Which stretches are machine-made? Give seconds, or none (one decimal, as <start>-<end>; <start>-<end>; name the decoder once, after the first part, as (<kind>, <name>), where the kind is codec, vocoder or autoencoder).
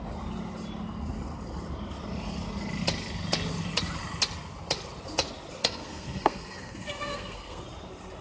5.6-7.6 (codec, SNAC)